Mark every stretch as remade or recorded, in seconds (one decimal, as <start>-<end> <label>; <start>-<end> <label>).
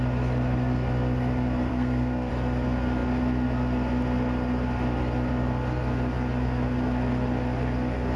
0.0-1.7 recorded; 1.7-2.3 remade; 2.3-8.2 recorded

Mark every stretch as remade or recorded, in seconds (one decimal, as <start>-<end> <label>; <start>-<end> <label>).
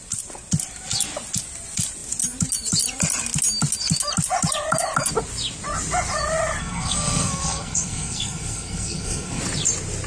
0.0-6.6 recorded; 6.6-9.4 remade; 9.4-10.1 recorded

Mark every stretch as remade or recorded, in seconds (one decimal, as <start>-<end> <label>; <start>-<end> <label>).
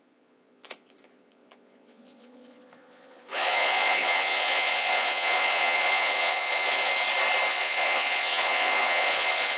0.0-6.9 remade; 6.9-7.5 recorded; 7.5-9.6 remade